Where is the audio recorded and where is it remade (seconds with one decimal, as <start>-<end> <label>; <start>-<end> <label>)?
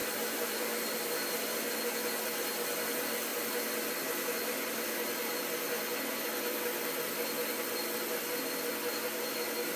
0.0-0.8 remade; 0.8-9.8 recorded